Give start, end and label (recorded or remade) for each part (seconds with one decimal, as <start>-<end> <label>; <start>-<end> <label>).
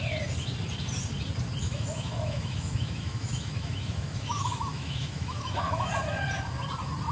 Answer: 0.0-1.6 recorded; 1.6-5.9 remade; 5.9-7.1 recorded